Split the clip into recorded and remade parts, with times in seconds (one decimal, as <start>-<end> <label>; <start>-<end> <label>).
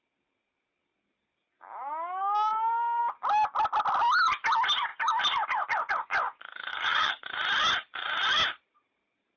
0.0-6.7 recorded; 6.7-7.2 remade; 7.2-9.4 recorded